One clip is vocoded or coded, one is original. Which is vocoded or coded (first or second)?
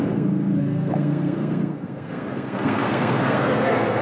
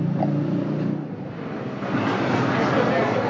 first